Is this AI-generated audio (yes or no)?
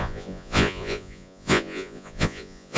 yes